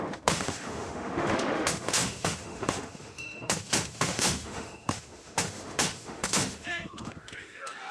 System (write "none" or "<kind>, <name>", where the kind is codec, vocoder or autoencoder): autoencoder, DAC-VAE